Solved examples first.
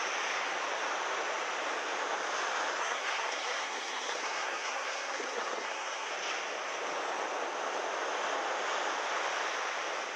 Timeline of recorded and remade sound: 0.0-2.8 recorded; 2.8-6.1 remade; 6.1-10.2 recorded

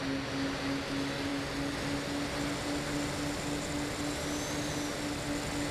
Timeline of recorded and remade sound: 0.0-5.7 recorded

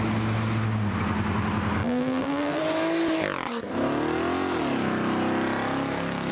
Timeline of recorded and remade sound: 0.0-1.8 recorded; 1.8-2.6 remade; 2.6-6.3 recorded

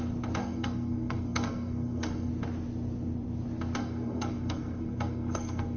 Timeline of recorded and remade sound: 0.0-0.4 recorded; 0.4-2.3 remade; 2.3-3.8 recorded; 3.8-5.8 remade

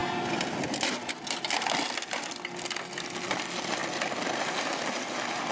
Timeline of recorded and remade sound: 0.0-5.5 recorded

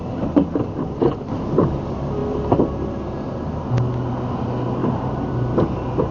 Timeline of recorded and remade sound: 0.0-6.1 recorded

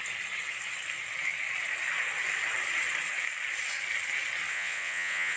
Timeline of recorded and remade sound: 0.0-4.5 recorded; 4.5-5.4 remade